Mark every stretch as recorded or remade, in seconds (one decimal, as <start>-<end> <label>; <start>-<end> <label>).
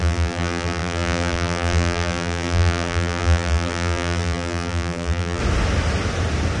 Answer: 0.0-5.4 remade; 5.4-6.6 recorded